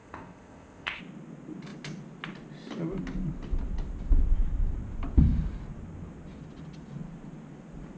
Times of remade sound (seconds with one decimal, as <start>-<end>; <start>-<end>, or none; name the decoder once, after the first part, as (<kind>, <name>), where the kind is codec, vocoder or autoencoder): 0.0-1.0 (codec, ZipCodec)